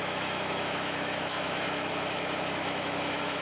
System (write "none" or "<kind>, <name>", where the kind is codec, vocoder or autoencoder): autoencoder, DAC-VAE